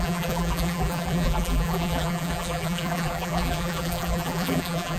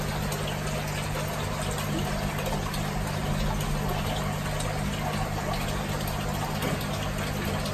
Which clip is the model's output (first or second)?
first